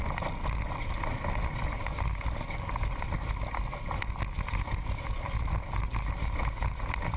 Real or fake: real